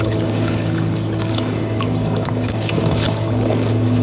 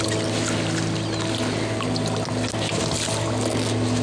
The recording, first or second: second